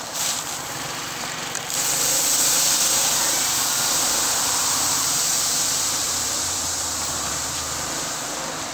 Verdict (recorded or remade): remade